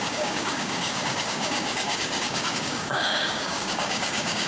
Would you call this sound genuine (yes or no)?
no